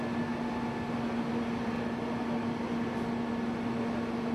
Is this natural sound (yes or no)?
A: yes